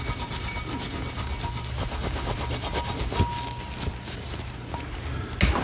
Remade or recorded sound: recorded